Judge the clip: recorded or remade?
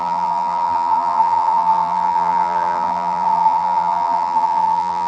remade